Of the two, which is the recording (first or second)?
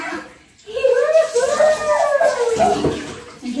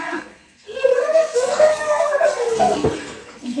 first